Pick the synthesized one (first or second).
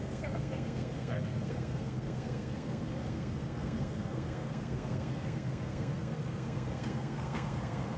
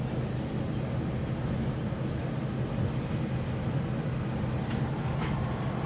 first